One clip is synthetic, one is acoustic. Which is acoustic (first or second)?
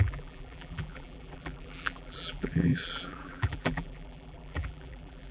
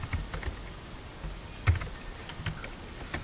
second